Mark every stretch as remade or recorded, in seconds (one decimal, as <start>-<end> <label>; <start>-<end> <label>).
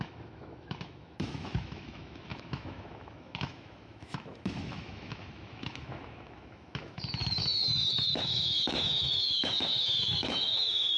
0.0-11.0 remade